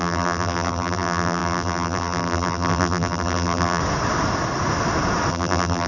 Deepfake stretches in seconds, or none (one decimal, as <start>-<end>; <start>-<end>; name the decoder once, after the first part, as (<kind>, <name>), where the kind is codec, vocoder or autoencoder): 0.0-3.8 (vocoder, BigVGAN v2); 5.3-5.9